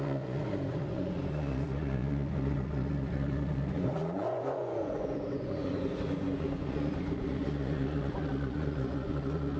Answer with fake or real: fake